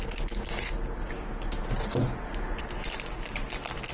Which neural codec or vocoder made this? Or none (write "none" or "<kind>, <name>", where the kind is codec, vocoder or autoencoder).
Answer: none